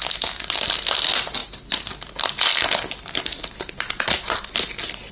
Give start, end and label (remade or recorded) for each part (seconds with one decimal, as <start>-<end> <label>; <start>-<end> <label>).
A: 0.0-5.1 recorded